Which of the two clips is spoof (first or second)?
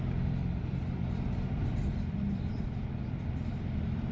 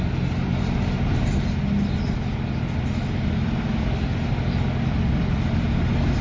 first